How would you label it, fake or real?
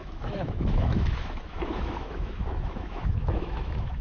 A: fake